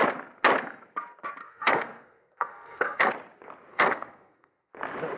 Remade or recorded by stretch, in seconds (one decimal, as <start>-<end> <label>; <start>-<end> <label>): 0.0-1.4 recorded; 1.4-3.1 remade; 3.1-3.7 recorded; 3.7-4.7 remade; 4.7-5.2 recorded